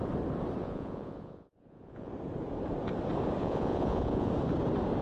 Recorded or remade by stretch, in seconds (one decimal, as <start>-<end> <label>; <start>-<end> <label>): 0.0-0.6 recorded; 0.6-2.1 remade; 2.1-3.4 recorded; 3.4-4.3 remade; 4.3-5.0 recorded